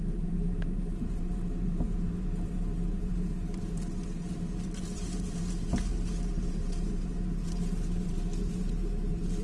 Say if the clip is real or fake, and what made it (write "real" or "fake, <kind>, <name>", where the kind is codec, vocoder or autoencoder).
fake, vocoder, BigVGAN v2